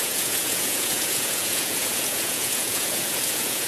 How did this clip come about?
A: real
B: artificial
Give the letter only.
B